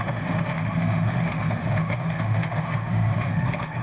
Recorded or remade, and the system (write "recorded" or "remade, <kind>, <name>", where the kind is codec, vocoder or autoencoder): remade, autoencoder, DAC-VAE